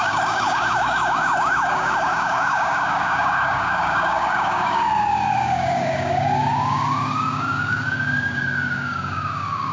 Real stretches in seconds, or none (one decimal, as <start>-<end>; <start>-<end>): none